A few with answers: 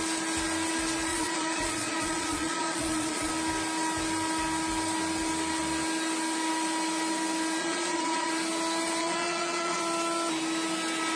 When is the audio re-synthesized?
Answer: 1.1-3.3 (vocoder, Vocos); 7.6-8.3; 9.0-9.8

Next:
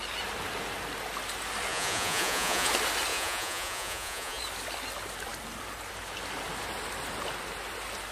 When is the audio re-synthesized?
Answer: 1.7-2.7 (vocoder, Vocos); 3.1-4.4

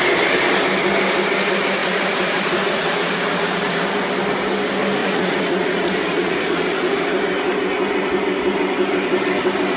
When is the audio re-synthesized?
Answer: 1.8-3.2 (vocoder, Vocos); 5.0-7.1